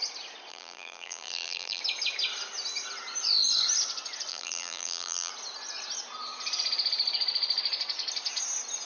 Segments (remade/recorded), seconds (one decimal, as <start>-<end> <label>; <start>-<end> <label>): 0.0-0.5 recorded; 0.5-1.8 remade; 1.8-4.3 recorded; 4.3-5.3 remade; 5.3-8.9 recorded